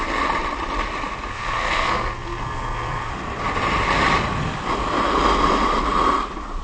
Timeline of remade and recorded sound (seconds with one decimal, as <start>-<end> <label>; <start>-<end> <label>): 0.0-1.3 recorded; 1.3-3.1 remade; 3.1-6.6 recorded